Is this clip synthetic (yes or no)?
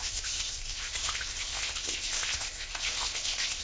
yes